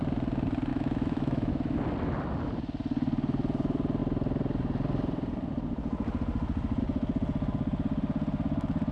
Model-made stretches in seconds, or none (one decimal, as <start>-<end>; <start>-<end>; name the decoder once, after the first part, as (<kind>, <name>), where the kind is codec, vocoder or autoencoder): 0.7-1.5 (autoencoder, DAC-VAE)